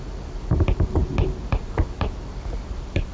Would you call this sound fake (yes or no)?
no